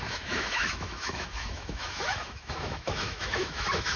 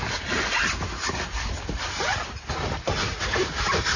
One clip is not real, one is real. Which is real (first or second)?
second